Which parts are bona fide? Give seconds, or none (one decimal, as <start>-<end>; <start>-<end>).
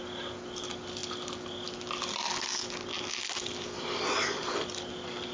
0.0-5.3